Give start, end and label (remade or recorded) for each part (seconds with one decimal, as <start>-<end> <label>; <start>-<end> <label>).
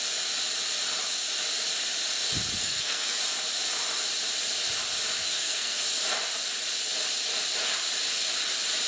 0.0-2.6 recorded; 2.6-3.2 remade; 3.2-5.2 recorded; 5.2-5.8 remade; 5.8-8.9 recorded